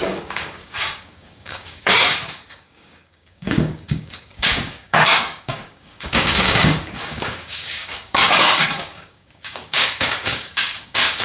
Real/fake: fake